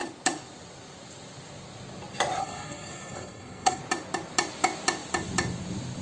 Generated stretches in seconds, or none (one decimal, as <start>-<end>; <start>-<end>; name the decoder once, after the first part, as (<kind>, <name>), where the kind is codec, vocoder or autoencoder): 2.4-3.8 (codec, SNAC)